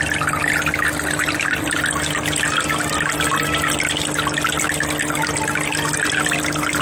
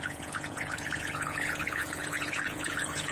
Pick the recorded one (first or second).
first